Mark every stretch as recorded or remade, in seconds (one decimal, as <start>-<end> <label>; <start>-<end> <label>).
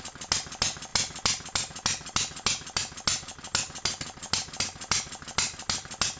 0.0-6.2 recorded